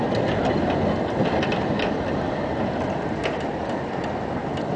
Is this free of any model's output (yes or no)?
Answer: yes